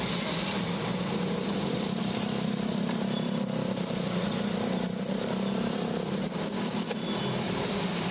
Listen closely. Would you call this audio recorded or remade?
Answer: remade